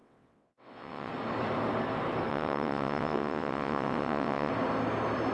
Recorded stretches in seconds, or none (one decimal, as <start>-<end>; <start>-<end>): 1.1-2.3; 4.5-5.3